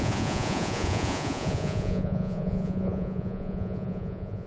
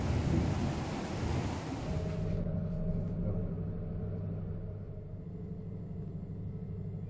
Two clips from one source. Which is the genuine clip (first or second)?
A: second